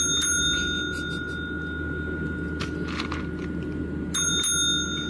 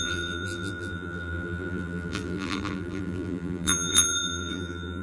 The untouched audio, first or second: first